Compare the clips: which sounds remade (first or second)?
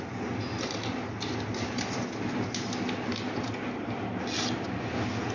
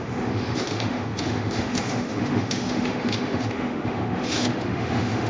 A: second